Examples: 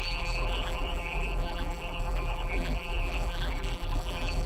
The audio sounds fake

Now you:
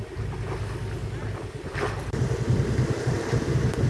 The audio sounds real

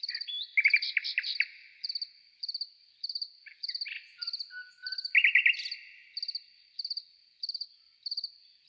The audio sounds real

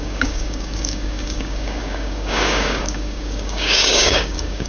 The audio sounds fake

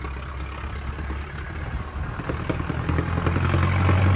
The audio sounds real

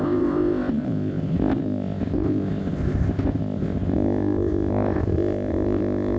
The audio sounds fake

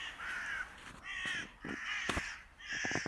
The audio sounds real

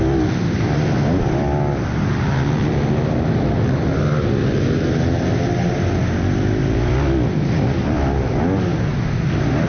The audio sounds real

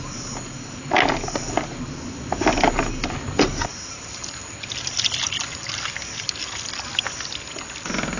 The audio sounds real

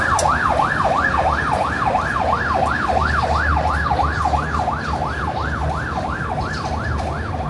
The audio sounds real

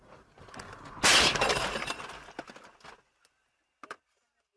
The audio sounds real